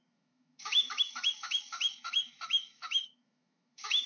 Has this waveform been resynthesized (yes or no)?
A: yes